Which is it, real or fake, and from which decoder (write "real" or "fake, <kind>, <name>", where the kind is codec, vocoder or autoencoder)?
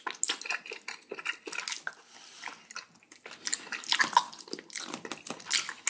real